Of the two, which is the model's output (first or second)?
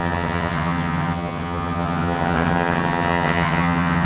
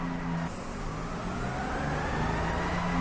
first